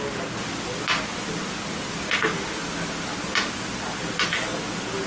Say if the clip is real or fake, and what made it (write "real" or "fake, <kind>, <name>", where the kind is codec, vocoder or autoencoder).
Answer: real